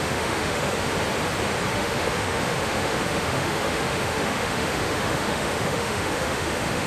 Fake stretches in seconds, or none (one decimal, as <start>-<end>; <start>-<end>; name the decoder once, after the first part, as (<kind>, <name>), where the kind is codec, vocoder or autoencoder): 0.0-0.9 (autoencoder, DAC-VAE); 1.7-6.9